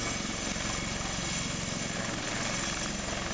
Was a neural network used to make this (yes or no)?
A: no